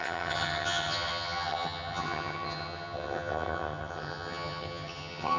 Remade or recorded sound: remade